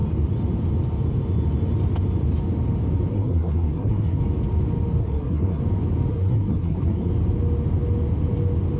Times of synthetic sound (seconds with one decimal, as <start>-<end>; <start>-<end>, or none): 3.1-4.2; 5.0-5.6; 6.1-7.1